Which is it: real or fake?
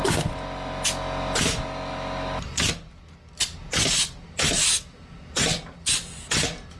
real